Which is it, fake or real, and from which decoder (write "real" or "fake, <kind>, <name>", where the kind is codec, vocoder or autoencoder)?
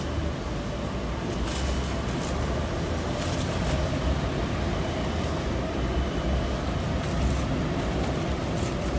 real